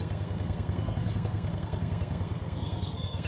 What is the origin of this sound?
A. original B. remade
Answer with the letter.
B